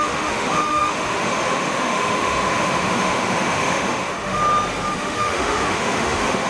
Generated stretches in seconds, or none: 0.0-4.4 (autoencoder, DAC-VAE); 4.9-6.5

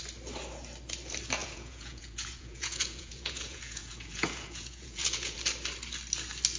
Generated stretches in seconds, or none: 1.4-5.4 (vocoder, Vocos)

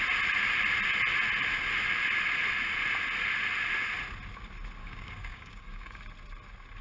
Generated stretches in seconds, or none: 4.8-6.0 (codec, DAC)

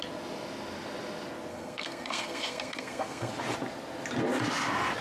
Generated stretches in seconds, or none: 1.5-3.3 (codec, SNAC)

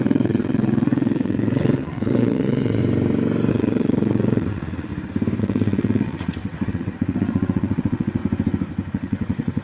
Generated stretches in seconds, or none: 0.0-2.8 (vocoder, WaveNeXt); 3.5-4.9; 5.4-8.2; 8.9-9.6